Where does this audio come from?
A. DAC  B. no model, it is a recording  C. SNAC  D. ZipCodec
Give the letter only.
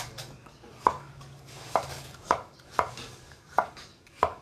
A